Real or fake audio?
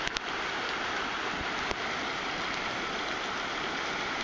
real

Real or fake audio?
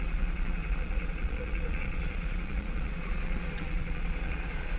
fake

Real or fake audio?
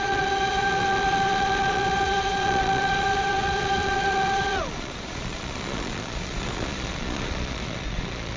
fake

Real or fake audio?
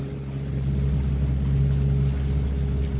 real